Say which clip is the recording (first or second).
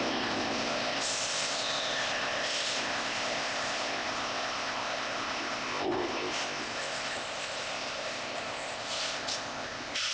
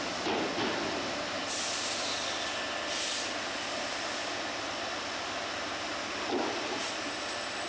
second